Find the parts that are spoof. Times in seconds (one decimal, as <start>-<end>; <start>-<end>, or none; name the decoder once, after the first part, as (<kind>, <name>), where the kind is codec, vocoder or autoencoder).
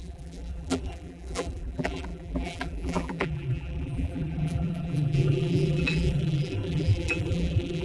0.0-7.8 (vocoder, BigVGAN v2)